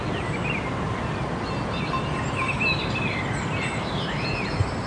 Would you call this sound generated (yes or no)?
no